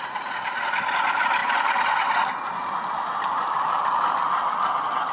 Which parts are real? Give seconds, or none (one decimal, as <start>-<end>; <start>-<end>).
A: 0.0-5.1